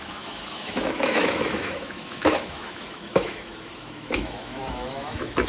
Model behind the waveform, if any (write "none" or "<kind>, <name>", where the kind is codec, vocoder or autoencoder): autoencoder, DAC-VAE